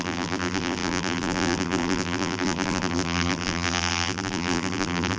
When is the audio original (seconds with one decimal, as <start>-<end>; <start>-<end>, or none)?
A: none